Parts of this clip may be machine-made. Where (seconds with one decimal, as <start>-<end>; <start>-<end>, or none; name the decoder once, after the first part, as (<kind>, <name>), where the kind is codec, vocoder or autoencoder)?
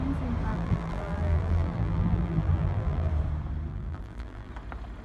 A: 0.5-3.1 (vocoder, BigVGAN v2); 3.7-4.5